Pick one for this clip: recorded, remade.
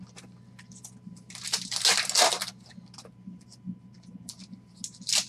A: recorded